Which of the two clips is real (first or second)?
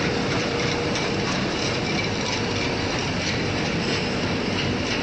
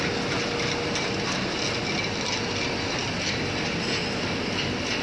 second